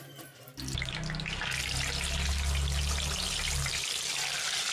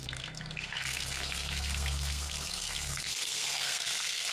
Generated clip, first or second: second